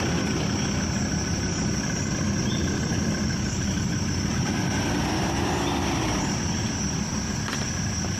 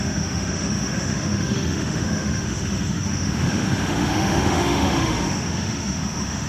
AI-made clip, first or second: second